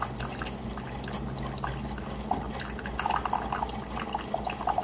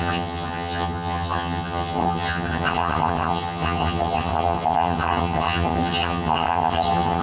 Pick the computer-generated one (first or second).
second